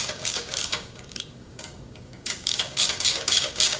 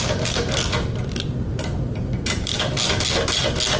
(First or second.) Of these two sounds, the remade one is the first